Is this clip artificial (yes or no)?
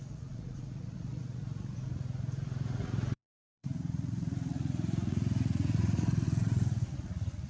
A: yes